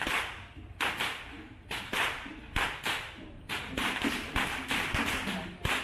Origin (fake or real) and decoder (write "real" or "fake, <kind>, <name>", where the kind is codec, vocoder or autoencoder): real